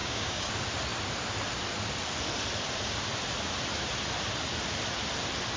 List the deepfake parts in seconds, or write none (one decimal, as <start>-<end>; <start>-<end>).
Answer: 0.0-0.5